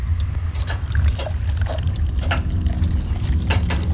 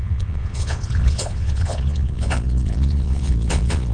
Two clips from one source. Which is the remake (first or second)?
second